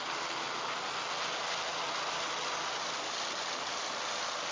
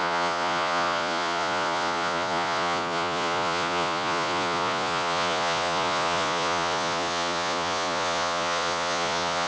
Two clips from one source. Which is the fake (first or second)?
second